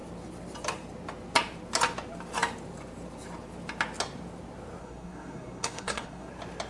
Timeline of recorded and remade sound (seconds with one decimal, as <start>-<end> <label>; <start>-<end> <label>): 0.0-4.8 recorded; 4.8-6.3 remade; 6.3-6.7 recorded